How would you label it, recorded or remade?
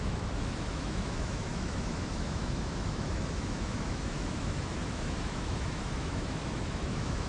remade